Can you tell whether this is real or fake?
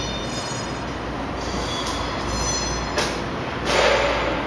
real